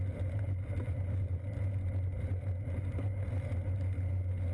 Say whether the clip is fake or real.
real